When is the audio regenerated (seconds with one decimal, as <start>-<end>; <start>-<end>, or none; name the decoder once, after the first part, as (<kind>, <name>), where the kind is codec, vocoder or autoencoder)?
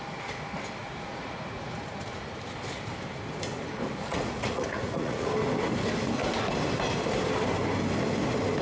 0.8-2.4 (vocoder, Vocos); 4.1-5.3